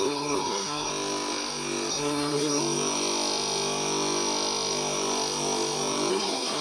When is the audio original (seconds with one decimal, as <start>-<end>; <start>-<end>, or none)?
0.9-1.9; 2.6-6.1

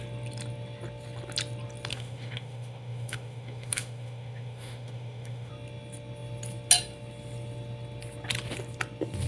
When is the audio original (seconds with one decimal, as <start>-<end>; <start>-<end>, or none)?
0.0-1.9; 5.5-9.3

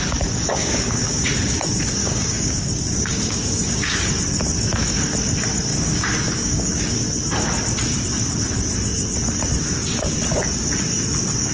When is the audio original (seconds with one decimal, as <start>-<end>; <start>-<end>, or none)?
0.0-0.5; 1.3-2.0; 4.1-5.7; 7.0-11.5

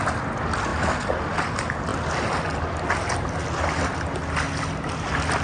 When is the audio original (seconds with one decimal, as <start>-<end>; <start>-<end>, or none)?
0.0-5.4

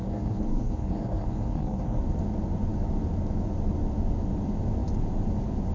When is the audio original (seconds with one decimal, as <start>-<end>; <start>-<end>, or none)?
2.0-5.7

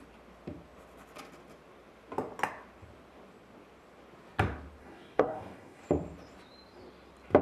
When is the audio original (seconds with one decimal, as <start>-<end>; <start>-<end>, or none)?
0.0-4.8; 5.8-7.4

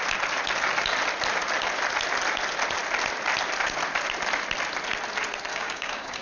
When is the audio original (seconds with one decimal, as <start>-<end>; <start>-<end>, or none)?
0.0-5.5

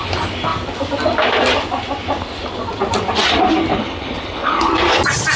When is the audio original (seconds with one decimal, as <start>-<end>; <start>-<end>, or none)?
0.0-3.7; 4.7-5.4